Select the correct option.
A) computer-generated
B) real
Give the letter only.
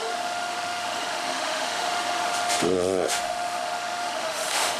A